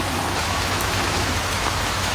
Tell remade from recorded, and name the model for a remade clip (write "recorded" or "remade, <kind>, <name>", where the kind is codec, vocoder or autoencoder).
remade, autoencoder, DAC-VAE